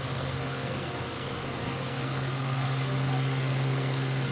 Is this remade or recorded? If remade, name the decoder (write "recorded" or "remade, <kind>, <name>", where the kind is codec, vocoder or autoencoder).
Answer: remade, codec, SNAC